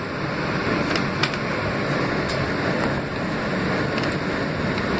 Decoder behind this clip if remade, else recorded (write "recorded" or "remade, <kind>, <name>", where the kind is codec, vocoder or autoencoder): recorded